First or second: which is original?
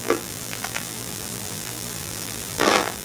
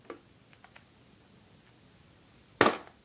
second